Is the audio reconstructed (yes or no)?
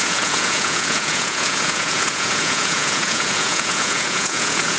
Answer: yes